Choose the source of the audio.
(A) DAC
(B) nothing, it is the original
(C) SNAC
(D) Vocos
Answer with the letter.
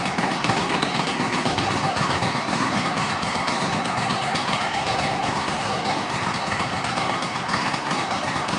C